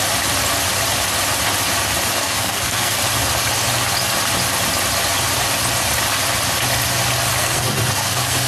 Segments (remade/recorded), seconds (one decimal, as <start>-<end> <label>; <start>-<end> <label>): 0.0-2.2 recorded; 2.2-3.0 remade; 3.0-7.4 recorded; 7.4-8.5 remade